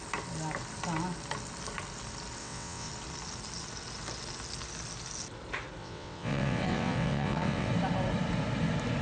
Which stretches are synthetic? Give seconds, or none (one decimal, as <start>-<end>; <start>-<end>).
2.4-2.9; 5.8-7.7

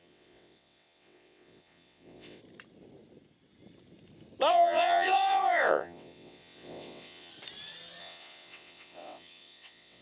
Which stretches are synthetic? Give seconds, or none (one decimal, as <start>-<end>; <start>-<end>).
0.0-2.4; 4.5-7.3; 8.0-10.0

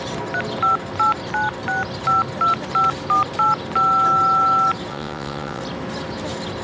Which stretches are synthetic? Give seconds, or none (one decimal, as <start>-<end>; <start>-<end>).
4.9-5.6

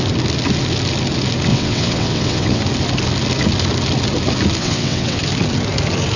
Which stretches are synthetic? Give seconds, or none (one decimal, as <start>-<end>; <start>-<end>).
1.5-2.6; 4.6-5.2